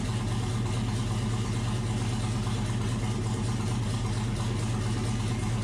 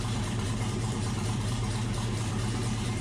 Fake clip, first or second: second